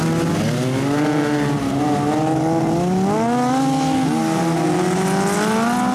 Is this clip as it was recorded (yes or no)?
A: yes